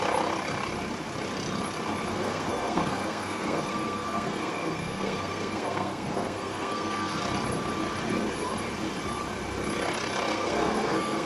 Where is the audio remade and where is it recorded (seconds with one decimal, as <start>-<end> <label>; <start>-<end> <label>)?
0.0-2.1 recorded; 2.1-7.2 remade; 7.2-10.3 recorded; 10.3-11.3 remade